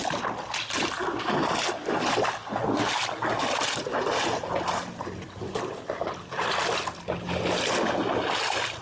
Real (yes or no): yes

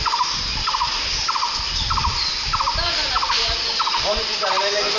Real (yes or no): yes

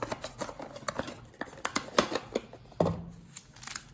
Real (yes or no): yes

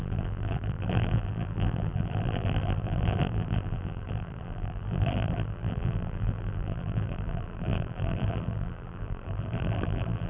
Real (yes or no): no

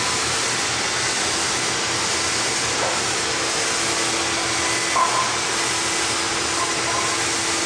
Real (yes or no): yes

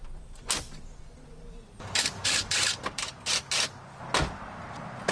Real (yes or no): yes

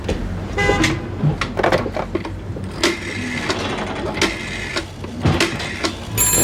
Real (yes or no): yes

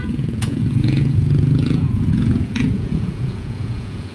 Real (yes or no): no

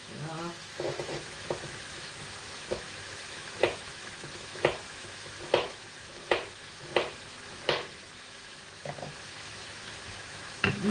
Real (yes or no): no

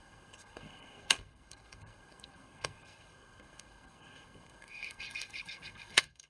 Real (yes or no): no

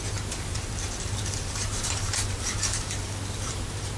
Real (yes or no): no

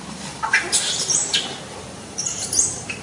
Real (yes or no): no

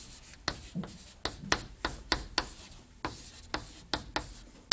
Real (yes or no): yes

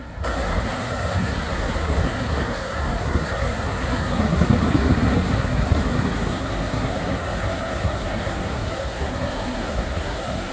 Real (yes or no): no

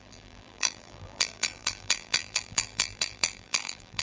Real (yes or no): no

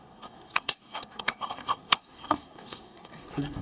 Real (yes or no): no